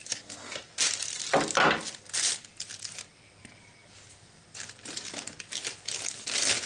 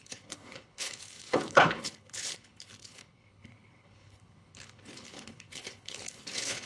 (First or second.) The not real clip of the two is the second